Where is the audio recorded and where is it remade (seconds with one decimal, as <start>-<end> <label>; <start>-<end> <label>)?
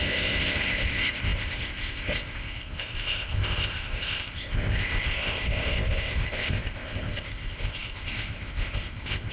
0.0-9.3 remade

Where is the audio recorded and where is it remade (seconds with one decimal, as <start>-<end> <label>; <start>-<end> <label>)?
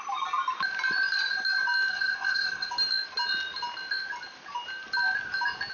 0.0-1.9 recorded; 1.9-2.7 remade; 2.7-5.7 recorded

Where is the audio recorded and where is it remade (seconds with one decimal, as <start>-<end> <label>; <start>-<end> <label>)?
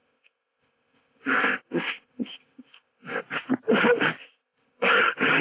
0.0-3.2 remade; 3.2-4.2 recorded; 4.2-5.0 remade; 5.0-5.4 recorded